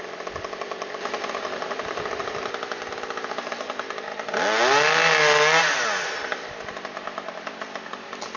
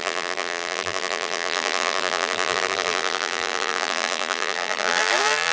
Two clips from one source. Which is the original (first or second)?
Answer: first